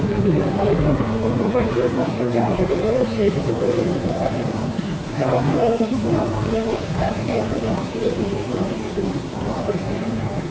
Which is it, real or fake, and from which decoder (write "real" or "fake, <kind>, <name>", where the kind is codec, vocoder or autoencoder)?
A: fake, codec, SNAC